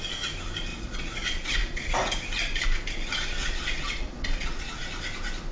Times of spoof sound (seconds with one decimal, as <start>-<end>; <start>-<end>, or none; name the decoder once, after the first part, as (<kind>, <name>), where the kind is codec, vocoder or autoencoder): 0.7-1.9 (vocoder, Vocos); 3.4-4.8